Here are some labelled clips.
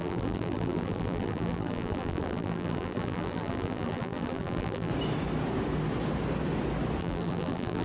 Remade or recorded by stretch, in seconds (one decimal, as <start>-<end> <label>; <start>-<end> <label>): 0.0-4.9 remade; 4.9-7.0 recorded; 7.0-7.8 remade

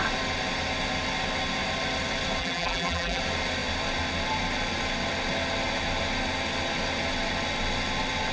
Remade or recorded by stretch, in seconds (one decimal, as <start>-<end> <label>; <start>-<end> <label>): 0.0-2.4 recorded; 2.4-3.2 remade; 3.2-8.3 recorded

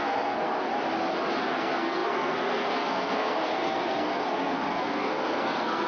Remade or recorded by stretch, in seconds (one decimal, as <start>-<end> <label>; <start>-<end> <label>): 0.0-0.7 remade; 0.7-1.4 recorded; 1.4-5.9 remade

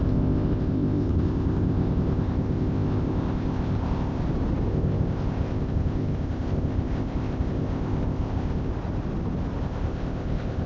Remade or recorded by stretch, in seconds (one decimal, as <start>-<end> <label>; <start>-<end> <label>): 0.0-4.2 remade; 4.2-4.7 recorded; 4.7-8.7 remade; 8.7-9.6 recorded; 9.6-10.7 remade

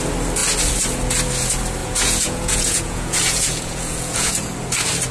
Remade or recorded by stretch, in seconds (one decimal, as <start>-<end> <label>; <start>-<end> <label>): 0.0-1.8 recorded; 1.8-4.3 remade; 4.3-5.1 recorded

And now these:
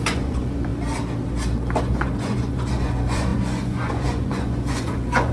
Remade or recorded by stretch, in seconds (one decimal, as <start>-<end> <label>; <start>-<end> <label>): 0.0-0.7 remade; 0.7-1.8 recorded; 1.8-5.3 remade